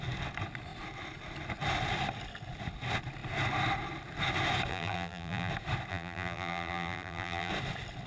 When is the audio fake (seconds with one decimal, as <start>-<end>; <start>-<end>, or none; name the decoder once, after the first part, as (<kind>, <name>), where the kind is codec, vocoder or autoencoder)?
4.7-5.5 (vocoder, BigVGAN v2); 5.9-7.5